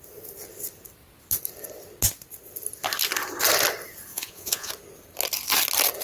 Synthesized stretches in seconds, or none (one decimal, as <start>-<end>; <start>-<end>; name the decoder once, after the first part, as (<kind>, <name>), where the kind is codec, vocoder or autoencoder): 4.1-4.7 (vocoder, Vocos)